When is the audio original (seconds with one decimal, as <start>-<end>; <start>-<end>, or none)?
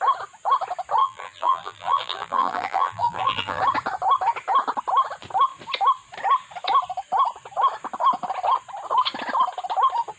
0.0-1.0; 3.6-10.2